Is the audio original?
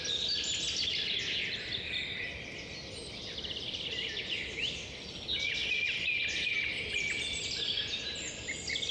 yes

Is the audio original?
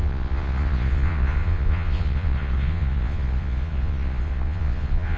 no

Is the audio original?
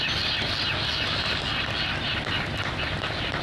yes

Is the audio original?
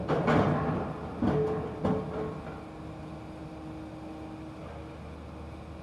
yes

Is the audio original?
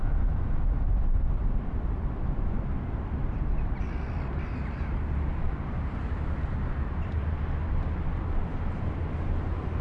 yes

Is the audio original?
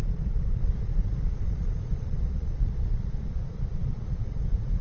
no